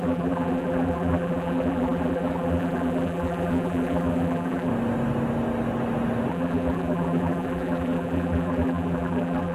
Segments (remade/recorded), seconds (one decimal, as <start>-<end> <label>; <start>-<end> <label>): 0.0-4.7 remade; 4.7-6.3 recorded; 6.3-9.5 remade